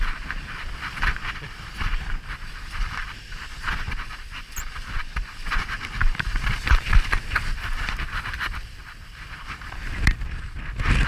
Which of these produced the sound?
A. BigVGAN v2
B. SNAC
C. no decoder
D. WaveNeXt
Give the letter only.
A